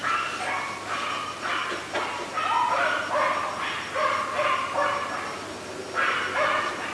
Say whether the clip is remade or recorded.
recorded